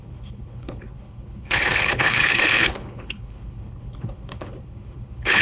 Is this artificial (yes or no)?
yes